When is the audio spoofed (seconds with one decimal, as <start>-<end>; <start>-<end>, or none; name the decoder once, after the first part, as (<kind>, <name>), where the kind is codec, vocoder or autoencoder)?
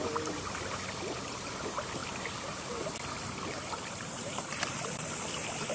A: none